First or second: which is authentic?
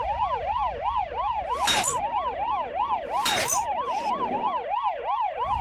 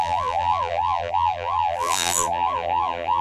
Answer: first